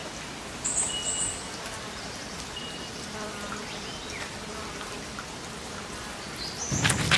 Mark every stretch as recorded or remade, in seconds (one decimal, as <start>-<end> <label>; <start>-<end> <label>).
0.0-7.2 recorded